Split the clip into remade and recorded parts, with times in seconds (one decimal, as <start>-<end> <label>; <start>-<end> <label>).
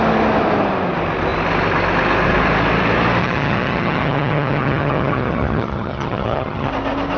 0.0-3.2 recorded; 3.2-6.7 remade; 6.7-7.2 recorded